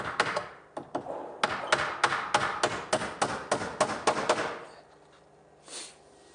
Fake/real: real